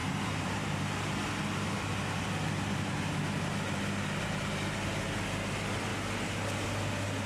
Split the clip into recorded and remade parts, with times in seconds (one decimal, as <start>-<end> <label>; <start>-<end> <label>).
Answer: 0.0-0.8 remade; 0.8-7.3 recorded